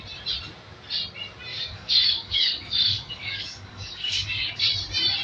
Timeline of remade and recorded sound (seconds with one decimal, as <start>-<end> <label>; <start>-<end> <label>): 0.0-1.5 recorded; 1.5-4.6 remade; 4.6-5.2 recorded